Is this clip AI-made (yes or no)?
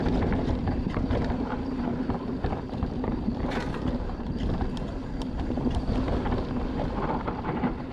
yes